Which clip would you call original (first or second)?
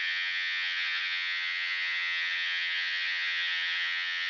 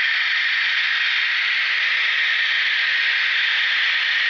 second